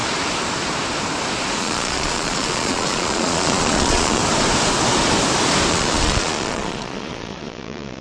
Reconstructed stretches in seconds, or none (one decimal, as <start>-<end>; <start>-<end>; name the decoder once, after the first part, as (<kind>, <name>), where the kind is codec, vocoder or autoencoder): 1.6-4.2 (vocoder, Vocos); 5.7-8.0